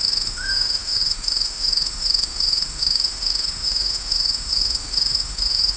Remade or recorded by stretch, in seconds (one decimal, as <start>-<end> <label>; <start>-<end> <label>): 0.0-5.8 remade